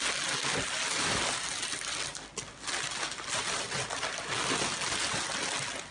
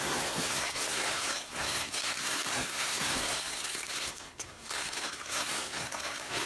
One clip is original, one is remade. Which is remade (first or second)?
second